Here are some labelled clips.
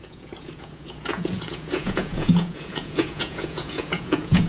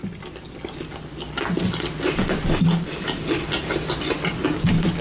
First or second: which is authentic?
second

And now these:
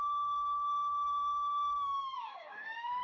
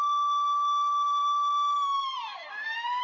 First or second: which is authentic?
second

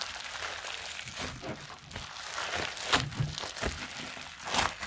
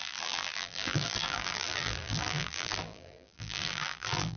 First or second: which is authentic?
first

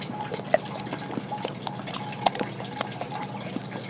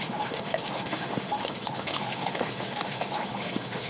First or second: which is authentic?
first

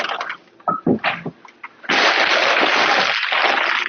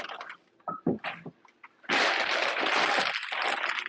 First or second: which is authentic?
first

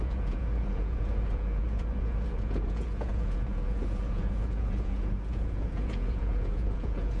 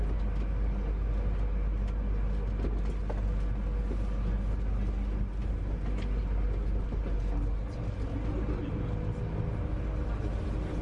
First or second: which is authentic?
second